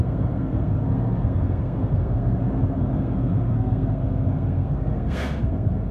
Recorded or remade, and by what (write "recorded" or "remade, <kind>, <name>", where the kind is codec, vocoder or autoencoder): remade, codec, SNAC